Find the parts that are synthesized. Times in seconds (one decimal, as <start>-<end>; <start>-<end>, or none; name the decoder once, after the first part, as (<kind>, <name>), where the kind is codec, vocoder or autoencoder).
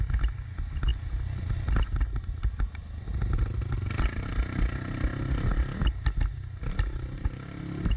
none